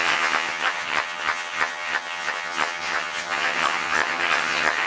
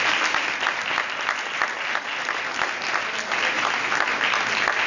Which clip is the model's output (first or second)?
first